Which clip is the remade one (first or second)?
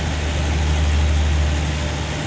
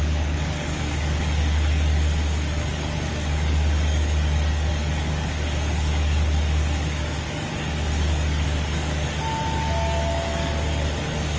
second